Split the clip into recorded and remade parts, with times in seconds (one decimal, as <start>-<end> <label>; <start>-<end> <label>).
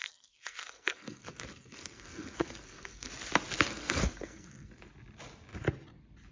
0.0-3.1 remade; 3.1-3.7 recorded; 3.7-4.7 remade; 4.7-6.3 recorded